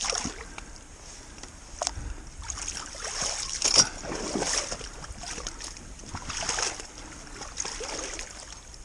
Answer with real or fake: real